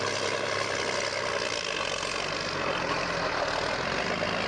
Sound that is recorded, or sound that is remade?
recorded